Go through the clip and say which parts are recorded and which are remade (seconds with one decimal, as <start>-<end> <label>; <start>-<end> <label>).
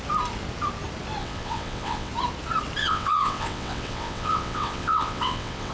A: 0.0-1.2 recorded; 1.2-2.1 remade; 2.1-2.8 recorded; 2.8-5.7 remade